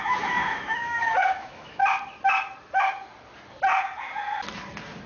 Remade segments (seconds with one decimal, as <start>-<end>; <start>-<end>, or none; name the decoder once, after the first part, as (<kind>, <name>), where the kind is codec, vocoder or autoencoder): 0.0-1.8 (autoencoder, DAC-VAE)